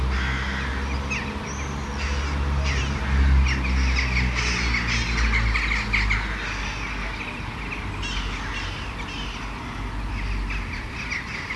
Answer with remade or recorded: recorded